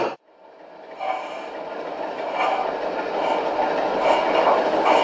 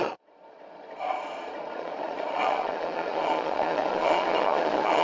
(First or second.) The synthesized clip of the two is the second